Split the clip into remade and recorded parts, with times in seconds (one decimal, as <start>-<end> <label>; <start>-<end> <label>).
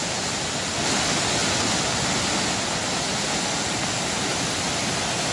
0.0-5.3 recorded